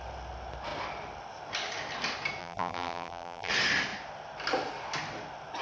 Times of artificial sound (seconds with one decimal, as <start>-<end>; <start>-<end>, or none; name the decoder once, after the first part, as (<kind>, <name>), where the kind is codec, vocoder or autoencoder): 2.4-3.5 (vocoder, BigVGAN v2)